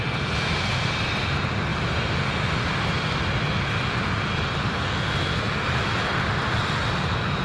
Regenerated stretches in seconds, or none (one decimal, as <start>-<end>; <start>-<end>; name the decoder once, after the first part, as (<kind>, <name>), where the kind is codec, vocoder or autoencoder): 0.7-1.2 (vocoder, BigVGAN v2)